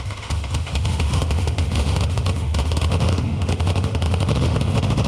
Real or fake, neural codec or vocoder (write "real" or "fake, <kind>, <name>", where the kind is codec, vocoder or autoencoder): fake, autoencoder, DAC-VAE